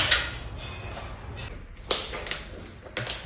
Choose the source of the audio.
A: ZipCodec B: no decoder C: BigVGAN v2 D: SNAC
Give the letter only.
B